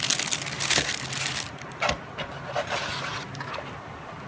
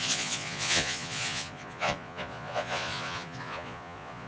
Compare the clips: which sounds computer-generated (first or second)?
second